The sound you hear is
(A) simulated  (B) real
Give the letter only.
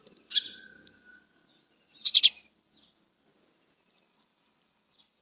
A